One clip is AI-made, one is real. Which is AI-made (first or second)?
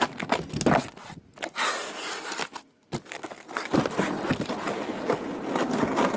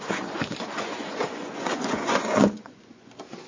second